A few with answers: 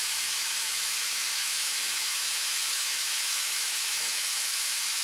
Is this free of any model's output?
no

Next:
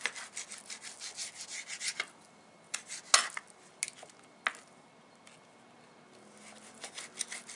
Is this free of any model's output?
yes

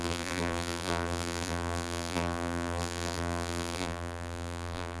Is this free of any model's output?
no